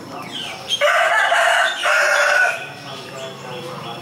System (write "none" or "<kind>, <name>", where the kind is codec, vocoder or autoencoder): none